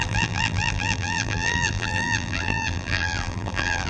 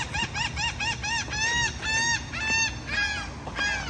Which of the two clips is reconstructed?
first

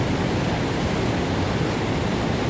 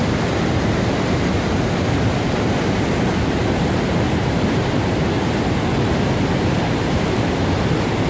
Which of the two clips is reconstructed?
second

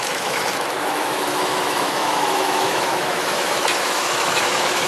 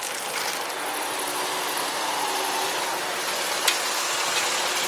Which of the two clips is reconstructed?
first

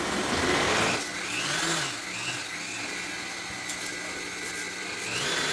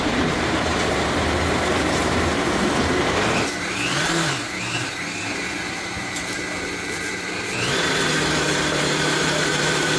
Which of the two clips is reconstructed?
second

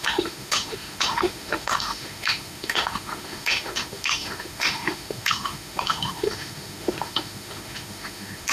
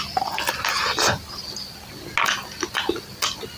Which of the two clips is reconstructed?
first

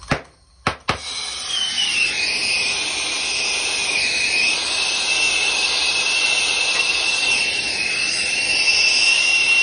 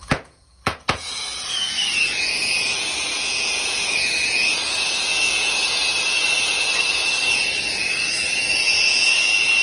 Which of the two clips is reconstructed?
second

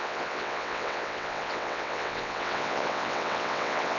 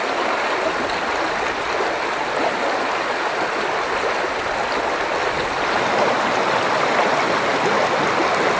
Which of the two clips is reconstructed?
first